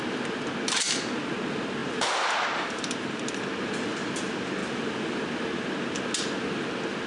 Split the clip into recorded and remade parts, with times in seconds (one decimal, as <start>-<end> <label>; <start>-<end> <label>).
0.0-1.8 recorded; 1.8-3.2 remade; 3.2-4.6 recorded; 4.6-5.3 remade; 5.3-7.1 recorded